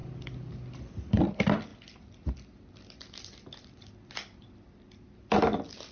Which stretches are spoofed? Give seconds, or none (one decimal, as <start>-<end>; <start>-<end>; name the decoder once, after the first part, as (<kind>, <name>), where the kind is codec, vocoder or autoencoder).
none